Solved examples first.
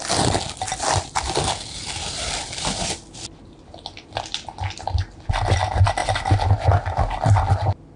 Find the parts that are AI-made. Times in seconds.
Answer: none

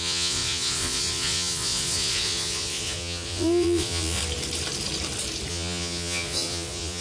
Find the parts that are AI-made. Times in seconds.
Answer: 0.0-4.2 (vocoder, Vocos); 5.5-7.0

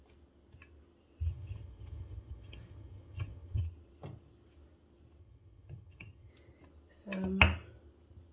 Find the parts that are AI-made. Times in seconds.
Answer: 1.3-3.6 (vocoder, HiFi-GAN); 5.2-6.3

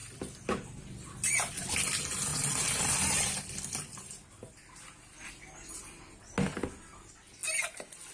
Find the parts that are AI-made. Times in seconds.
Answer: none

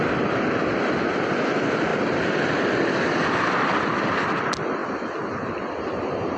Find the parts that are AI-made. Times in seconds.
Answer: 1.9-4.2 (vocoder, BigVGAN v2)